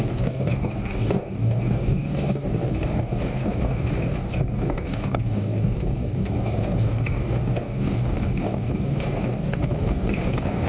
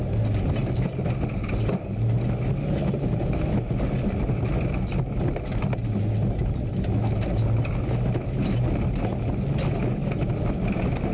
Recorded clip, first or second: second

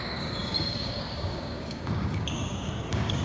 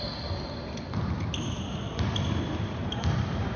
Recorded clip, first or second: second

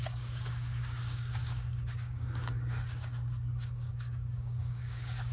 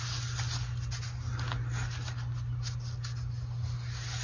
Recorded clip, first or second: second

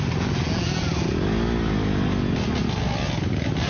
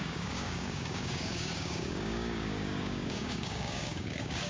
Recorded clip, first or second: first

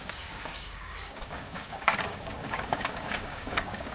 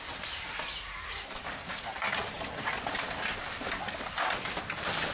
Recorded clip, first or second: second